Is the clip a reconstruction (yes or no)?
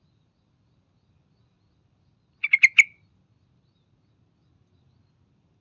no